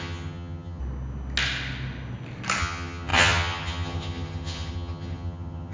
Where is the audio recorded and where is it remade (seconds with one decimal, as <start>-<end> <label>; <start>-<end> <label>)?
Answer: 0.0-0.8 remade; 0.8-2.6 recorded; 2.6-5.7 remade